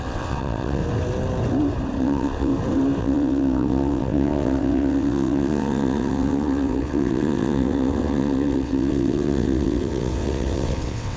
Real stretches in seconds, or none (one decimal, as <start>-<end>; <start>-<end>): 0.8-2.0; 2.5-3.0